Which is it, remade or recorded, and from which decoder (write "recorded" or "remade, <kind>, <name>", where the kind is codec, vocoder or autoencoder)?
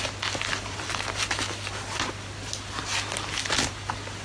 recorded